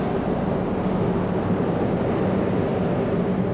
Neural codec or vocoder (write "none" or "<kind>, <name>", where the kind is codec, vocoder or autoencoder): none